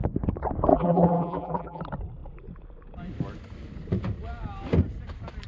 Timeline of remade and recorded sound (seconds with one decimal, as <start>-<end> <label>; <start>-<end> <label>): 0.0-0.7 recorded; 0.7-1.8 remade; 1.8-5.5 recorded